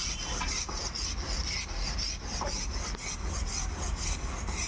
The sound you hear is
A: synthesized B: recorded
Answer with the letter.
B